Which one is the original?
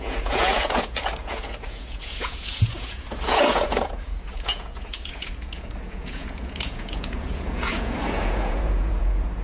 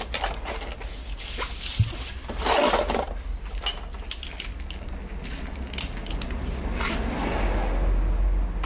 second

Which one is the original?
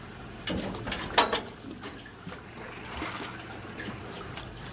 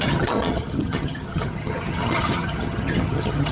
first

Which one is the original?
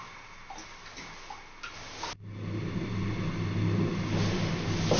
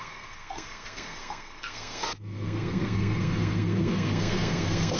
first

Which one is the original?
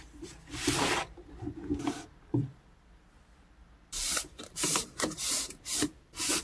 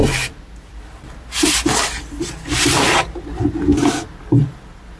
second